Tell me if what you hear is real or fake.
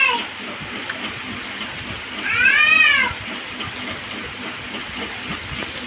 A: real